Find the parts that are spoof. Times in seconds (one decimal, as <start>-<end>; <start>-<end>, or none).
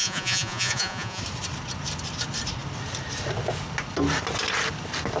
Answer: 0.0-1.2